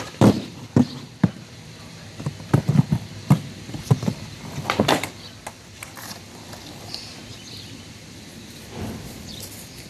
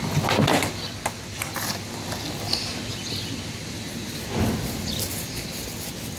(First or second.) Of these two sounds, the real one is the second